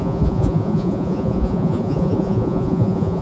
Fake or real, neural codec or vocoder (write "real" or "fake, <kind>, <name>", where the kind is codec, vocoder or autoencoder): fake, vocoder, Vocos